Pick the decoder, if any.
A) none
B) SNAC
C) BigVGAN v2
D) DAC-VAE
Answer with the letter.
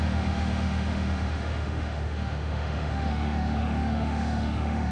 D